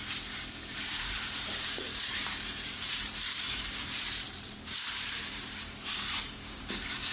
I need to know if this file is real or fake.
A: fake